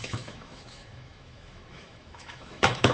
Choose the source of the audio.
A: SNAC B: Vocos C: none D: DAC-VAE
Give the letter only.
D